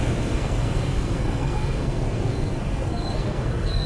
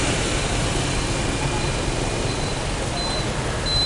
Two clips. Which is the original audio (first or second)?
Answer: second